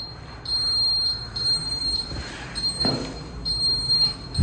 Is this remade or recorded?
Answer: recorded